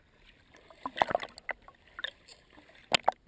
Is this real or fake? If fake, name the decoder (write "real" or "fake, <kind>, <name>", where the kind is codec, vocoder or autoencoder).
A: real